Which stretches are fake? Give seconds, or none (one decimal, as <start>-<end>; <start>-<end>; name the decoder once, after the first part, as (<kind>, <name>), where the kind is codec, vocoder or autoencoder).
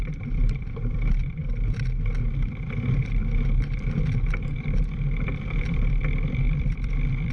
0.0-1.4 (vocoder, BigVGAN v2); 4.5-7.3